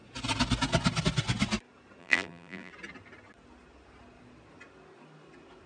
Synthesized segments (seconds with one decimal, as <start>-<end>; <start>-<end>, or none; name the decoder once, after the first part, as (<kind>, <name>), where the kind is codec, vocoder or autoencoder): 2.0-2.7 (vocoder, BigVGAN v2)